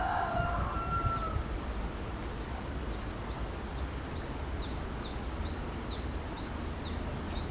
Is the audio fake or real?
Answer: real